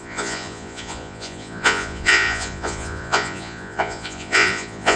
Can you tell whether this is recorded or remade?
remade